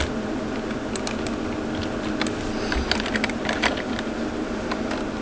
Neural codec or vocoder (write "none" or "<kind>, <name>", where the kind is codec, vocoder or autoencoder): none